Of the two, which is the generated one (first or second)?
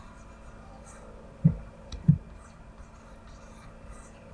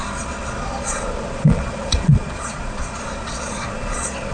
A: second